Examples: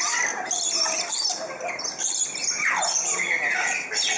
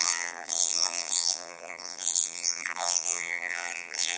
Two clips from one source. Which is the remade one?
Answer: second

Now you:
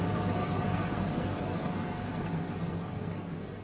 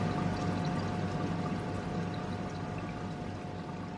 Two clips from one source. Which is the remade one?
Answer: first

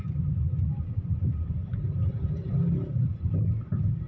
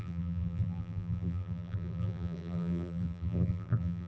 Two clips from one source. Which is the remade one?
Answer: second